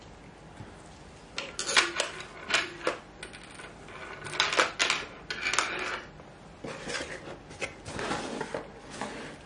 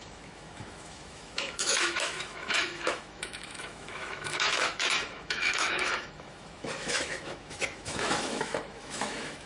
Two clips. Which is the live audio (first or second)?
first